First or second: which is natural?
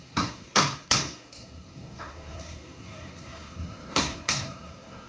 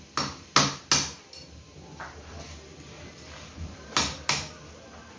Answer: second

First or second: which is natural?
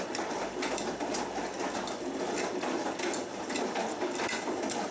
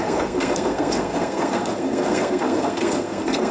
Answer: first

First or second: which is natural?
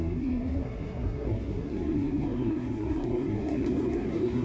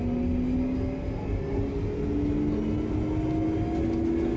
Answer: second